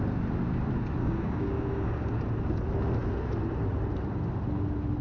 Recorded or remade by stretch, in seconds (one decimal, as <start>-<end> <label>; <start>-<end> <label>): 0.0-1.0 recorded; 1.0-2.1 remade; 2.1-5.0 recorded